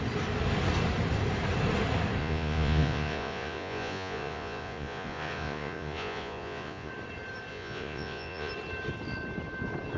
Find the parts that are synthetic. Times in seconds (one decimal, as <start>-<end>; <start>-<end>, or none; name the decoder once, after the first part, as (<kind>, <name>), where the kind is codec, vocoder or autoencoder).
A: 2.2-6.9 (vocoder, Vocos); 7.5-8.5